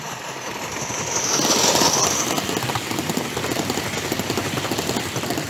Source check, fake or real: real